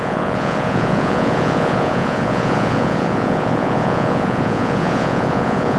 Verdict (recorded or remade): remade